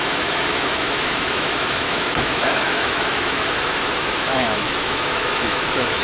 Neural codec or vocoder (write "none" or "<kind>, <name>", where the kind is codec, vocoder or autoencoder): autoencoder, DAC-VAE